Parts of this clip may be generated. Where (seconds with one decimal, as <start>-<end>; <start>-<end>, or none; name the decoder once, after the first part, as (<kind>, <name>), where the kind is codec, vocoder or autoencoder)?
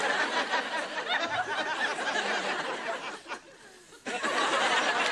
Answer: none